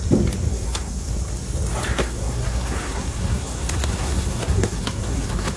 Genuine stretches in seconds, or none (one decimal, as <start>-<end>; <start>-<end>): 0.0-0.5; 1.1-1.9